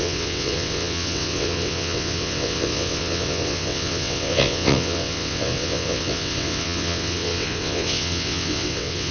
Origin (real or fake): fake